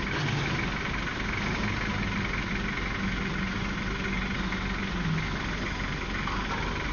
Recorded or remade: recorded